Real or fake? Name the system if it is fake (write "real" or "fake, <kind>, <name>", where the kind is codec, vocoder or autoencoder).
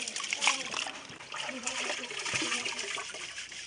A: fake, vocoder, BigVGAN v2